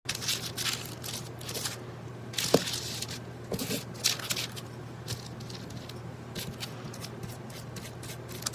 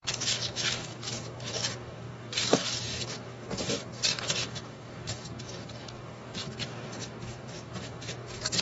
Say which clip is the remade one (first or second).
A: second